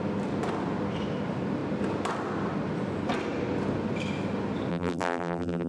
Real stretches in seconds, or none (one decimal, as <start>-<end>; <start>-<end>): 0.0-4.7